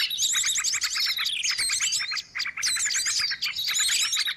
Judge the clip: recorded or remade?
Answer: recorded